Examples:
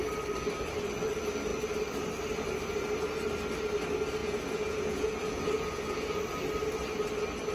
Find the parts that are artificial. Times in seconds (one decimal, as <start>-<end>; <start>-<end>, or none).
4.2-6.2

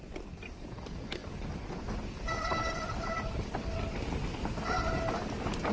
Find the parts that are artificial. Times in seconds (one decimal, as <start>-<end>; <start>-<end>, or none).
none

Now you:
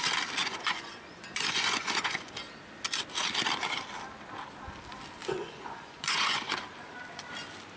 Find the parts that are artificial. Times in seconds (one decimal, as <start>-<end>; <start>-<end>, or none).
0.4-2.3; 5.2-6.5

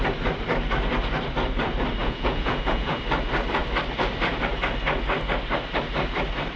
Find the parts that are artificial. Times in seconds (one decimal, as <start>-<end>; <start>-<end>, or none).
2.0-3.0

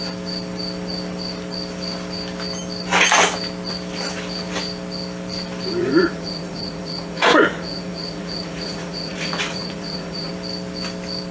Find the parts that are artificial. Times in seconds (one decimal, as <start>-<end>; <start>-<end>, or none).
5.8-10.3

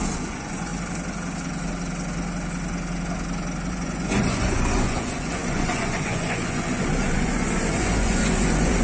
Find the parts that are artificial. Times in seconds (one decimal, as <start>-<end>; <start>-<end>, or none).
0.0-0.7; 3.7-8.8